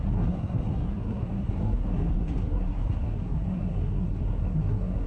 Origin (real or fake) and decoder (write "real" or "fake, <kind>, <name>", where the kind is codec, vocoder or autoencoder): fake, codec, SNAC